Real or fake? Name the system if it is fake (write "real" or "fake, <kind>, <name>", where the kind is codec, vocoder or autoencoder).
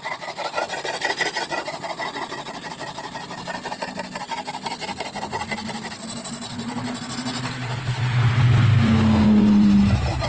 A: real